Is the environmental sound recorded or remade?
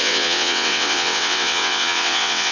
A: remade